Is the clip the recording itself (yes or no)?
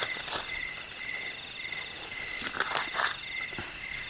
yes